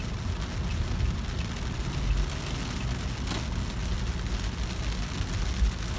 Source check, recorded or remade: recorded